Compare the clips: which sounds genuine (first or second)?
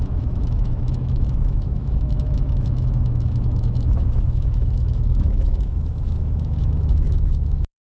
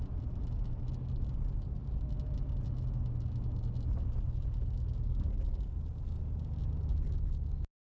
second